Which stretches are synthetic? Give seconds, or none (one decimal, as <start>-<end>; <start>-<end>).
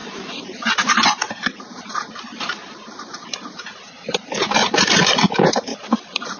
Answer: 0.0-5.7